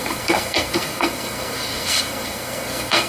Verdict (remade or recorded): remade